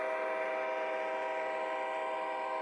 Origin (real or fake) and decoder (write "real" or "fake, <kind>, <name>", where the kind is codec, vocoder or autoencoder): real